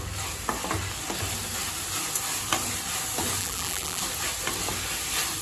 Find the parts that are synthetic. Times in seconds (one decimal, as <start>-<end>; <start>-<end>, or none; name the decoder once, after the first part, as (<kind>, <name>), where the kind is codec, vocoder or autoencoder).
3.4-4.0 (vocoder, BigVGAN v2)